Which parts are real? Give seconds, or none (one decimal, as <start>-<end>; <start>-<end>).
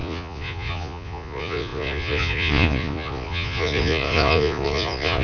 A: none